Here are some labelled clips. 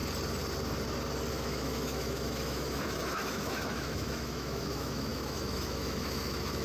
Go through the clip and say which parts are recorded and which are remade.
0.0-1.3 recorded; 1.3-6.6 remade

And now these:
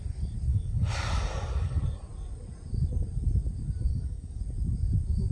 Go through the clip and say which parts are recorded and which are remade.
0.0-0.5 recorded; 0.5-1.8 remade; 1.8-3.9 recorded; 3.9-4.4 remade; 4.4-5.3 recorded

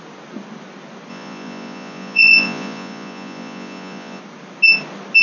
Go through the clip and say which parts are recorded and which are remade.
0.0-1.1 recorded; 1.1-4.2 remade; 4.2-5.2 recorded

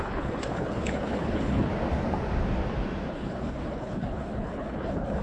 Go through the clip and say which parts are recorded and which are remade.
0.0-1.7 remade; 1.7-3.1 recorded; 3.1-5.2 remade

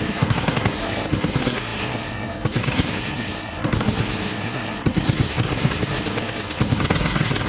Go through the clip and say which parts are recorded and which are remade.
0.0-7.5 remade

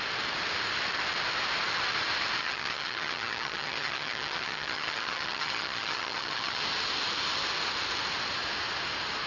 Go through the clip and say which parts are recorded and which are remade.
0.0-2.4 recorded; 2.4-6.6 remade; 6.6-9.3 recorded